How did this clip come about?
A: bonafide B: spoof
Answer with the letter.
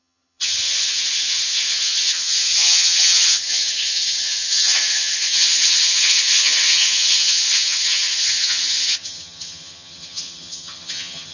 B